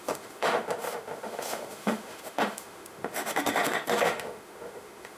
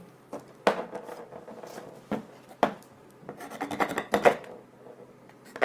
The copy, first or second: first